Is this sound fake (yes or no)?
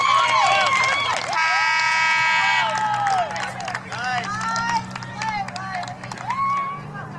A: no